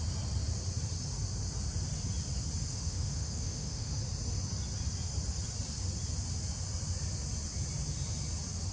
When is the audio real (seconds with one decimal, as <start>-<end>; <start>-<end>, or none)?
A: 0.0-2.7; 4.0-8.7